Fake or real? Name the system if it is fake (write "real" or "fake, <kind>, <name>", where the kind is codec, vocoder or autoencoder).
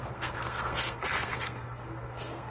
fake, codec, SNAC